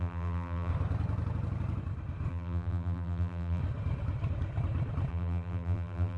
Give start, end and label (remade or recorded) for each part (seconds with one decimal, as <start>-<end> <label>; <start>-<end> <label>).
0.0-0.7 remade; 0.7-2.3 recorded; 2.3-3.6 remade; 3.6-5.1 recorded; 5.1-6.2 remade